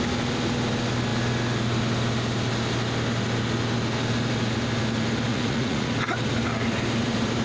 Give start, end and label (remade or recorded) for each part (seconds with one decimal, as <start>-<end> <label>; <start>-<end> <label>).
0.0-5.3 recorded; 5.3-5.9 remade; 5.9-7.4 recorded